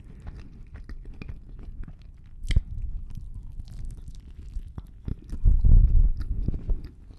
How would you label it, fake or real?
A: real